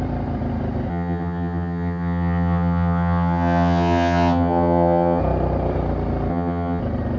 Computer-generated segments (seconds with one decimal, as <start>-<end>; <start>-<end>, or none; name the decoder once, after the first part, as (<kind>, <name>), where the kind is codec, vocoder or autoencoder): 0.9-5.2 (vocoder, HiFi-GAN); 6.3-6.8